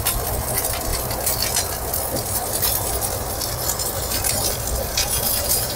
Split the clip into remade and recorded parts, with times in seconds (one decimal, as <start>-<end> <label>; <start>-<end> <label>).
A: 0.0-4.9 recorded; 4.9-5.8 remade